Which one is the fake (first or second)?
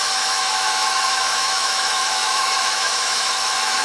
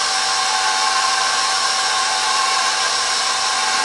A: first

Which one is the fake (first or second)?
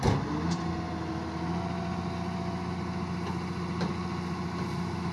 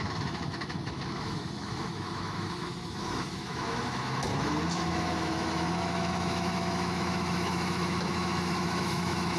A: second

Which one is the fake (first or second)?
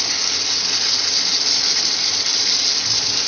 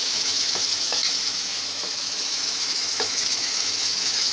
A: second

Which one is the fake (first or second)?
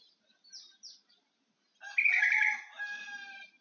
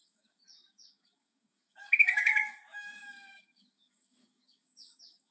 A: second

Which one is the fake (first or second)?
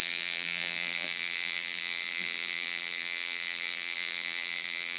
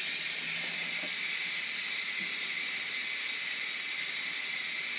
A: first